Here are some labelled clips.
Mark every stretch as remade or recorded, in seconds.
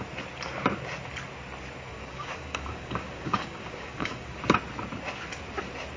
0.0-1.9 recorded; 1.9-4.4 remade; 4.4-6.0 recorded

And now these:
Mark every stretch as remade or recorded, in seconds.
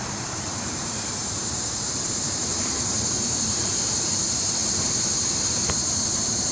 0.0-6.5 remade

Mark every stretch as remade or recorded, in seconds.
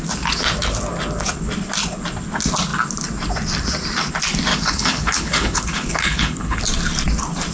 0.0-4.5 recorded; 4.5-6.6 remade; 6.6-7.5 recorded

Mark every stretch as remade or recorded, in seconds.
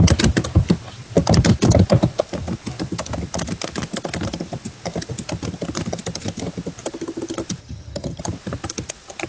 0.0-7.6 recorded; 7.6-8.2 remade; 8.2-9.3 recorded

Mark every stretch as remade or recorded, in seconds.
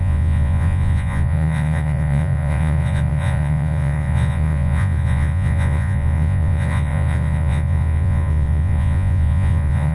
0.0-9.9 remade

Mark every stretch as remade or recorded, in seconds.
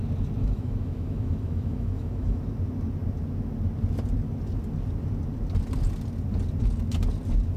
0.0-0.4 recorded; 0.4-2.4 remade; 2.4-7.6 recorded